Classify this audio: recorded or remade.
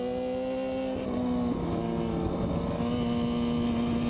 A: recorded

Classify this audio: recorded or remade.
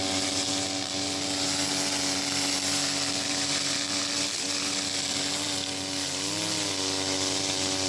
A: recorded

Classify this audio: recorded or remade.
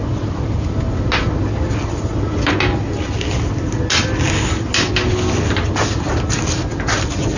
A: recorded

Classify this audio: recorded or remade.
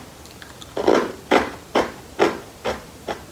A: remade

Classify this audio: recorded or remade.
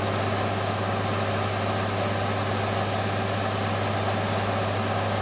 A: recorded